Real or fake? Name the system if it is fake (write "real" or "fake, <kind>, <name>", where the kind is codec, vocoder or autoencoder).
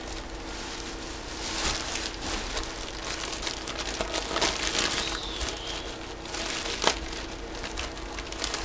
real